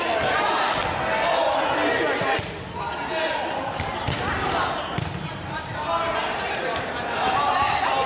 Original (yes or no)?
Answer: yes